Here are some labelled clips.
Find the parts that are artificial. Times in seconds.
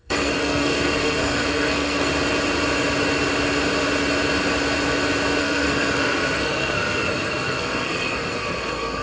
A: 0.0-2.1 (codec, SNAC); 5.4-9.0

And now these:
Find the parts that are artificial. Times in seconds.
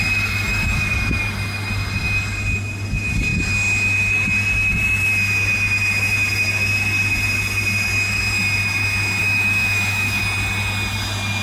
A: 9.2-10.2 (autoencoder, DAC-VAE)